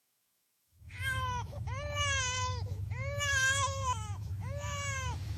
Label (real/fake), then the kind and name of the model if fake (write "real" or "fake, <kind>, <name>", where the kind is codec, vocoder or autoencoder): fake, autoencoder, DAC-VAE